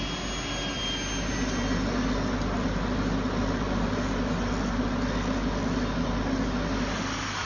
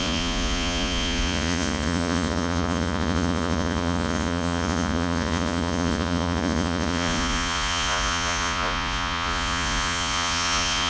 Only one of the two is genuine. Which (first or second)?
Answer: first